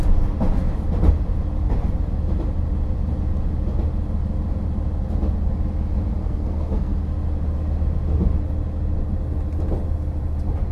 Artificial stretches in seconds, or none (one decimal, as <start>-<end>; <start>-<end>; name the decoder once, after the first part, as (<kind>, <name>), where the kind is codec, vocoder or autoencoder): 6.2-7.0 (codec, SNAC)